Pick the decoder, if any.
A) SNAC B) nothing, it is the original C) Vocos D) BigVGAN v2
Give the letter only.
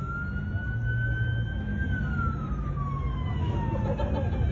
B